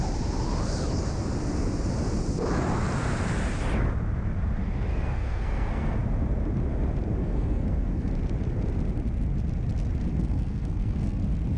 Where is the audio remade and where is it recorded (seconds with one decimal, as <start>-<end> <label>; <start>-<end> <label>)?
0.0-4.9 recorded; 4.9-6.0 remade; 6.0-7.2 recorded; 7.2-8.1 remade; 8.1-10.1 recorded; 10.1-11.2 remade; 11.2-11.6 recorded